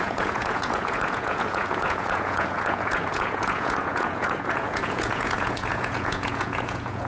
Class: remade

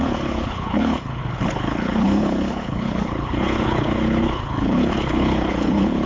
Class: remade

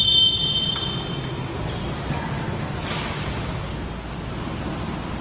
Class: recorded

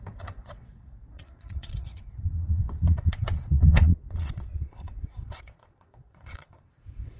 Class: remade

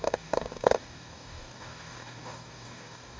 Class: remade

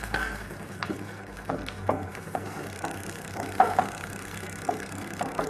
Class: remade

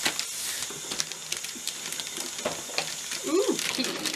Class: recorded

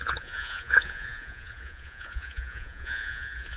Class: remade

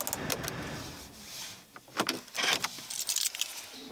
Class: recorded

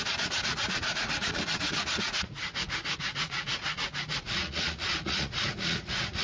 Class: remade